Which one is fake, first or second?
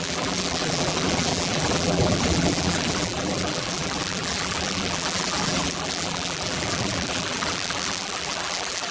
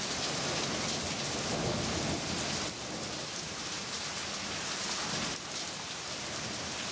first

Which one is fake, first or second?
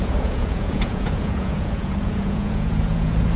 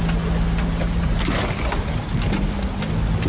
first